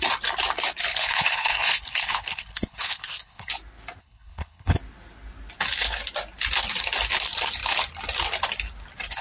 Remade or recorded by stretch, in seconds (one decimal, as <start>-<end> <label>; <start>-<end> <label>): 0.0-0.9 recorded; 0.9-3.5 remade; 3.5-4.0 recorded; 4.0-4.8 remade; 4.8-9.2 recorded